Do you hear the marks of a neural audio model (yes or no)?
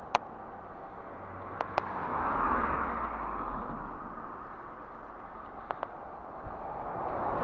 no